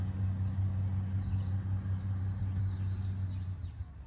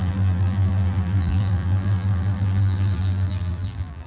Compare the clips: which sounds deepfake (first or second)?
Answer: second